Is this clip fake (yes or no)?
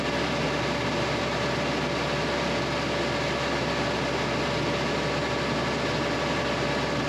no